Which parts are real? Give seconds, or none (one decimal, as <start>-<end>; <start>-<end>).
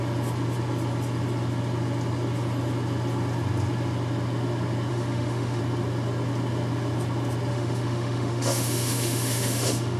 0.0-4.9; 5.6-7.5